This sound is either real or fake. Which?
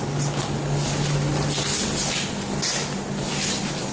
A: real